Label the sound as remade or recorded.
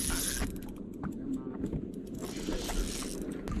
recorded